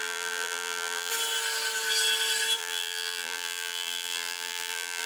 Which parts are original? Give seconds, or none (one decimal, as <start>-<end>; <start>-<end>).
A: 1.1-2.6